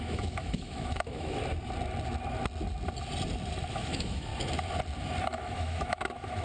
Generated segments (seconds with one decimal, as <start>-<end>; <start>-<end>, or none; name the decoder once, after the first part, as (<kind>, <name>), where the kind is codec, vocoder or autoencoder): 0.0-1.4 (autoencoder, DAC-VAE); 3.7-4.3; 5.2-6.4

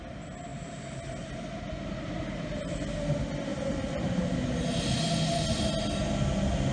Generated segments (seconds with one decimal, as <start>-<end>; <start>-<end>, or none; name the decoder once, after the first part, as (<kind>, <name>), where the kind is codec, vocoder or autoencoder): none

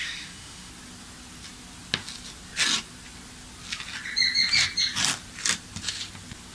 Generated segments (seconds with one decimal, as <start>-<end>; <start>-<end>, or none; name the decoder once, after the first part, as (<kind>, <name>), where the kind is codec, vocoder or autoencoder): 0.0-0.7 (autoencoder, DAC-VAE)

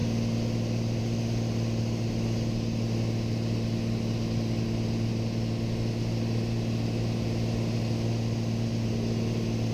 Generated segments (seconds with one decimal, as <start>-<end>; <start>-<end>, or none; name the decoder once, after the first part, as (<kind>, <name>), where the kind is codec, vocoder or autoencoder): none

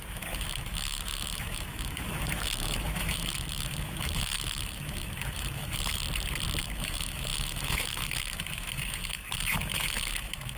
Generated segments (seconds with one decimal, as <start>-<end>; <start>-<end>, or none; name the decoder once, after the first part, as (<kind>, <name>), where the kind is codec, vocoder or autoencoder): 0.0-6.0 (autoencoder, DAC-VAE); 6.6-10.6